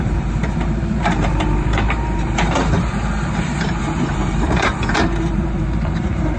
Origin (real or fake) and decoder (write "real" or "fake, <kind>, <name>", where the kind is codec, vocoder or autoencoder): fake, vocoder, BigVGAN v2